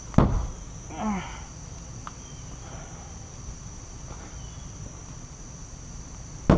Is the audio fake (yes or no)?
no